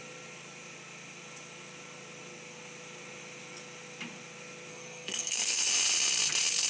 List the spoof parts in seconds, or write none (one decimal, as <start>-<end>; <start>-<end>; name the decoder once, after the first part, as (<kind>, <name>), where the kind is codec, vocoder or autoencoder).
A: 4.7-5.7 (codec, SNAC)